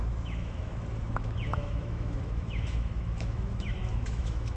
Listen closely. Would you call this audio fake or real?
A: fake